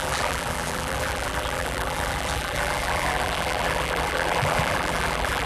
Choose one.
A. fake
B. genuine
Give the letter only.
A